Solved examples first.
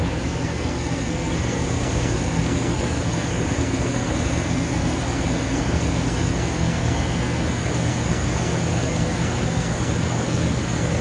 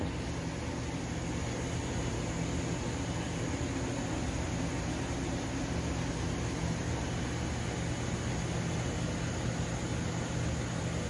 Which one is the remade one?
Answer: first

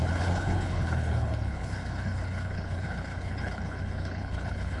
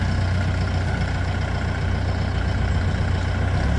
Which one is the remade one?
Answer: first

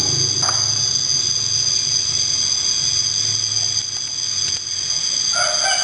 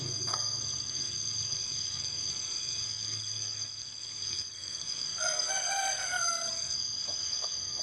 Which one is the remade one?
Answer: second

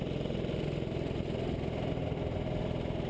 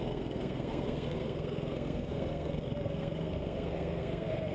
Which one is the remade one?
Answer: second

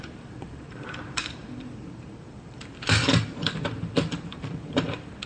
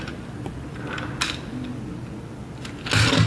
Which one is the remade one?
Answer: first